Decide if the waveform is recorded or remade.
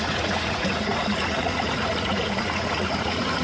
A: remade